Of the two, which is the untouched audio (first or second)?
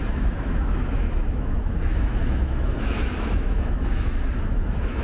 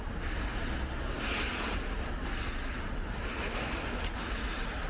second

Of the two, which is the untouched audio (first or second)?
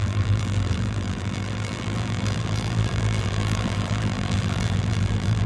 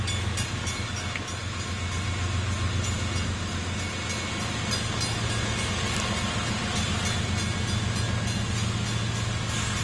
second